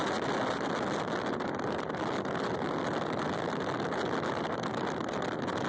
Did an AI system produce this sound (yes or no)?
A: no